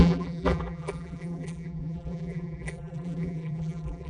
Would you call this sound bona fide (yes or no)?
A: no